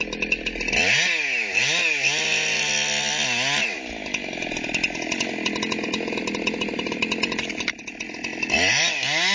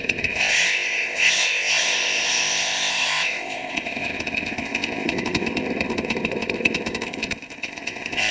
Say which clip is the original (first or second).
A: first